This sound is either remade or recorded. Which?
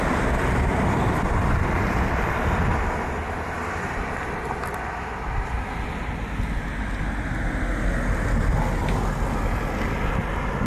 recorded